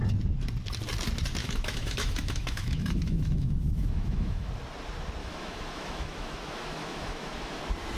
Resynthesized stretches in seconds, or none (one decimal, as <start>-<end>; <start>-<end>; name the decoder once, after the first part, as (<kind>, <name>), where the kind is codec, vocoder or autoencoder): 1.4-4.5 (autoencoder, DAC-VAE); 5.2-7.6